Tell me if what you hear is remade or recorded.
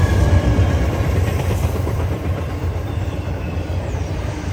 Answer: remade